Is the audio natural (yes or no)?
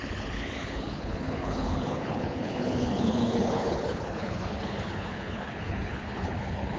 no